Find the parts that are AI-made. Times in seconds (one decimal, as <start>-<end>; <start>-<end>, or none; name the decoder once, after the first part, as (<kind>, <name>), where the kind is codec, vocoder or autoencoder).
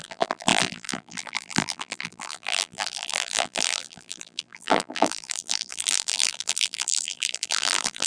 0.0-8.1 (vocoder, BigVGAN v2)